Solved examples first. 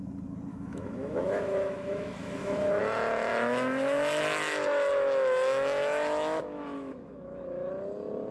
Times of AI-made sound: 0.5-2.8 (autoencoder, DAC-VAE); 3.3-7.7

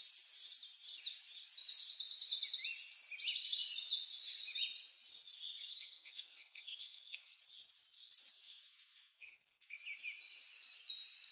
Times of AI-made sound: 5.7-7.4 (codec, SNAC); 8.3-9.8

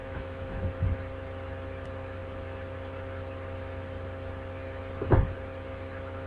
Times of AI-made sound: 0.0-0.6 (autoencoder, DAC-VAE)